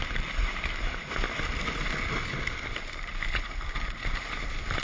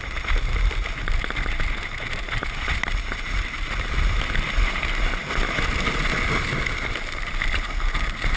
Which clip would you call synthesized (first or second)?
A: first